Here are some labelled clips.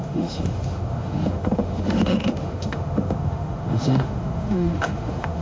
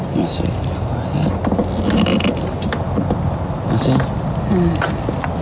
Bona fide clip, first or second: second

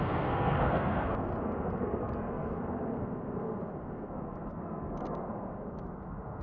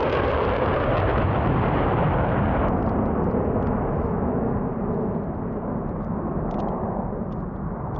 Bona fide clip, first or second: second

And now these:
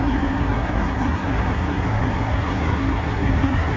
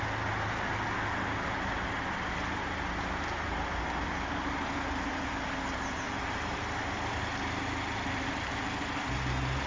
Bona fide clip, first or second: second